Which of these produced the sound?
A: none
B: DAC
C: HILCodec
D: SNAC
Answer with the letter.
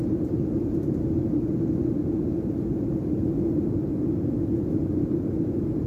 A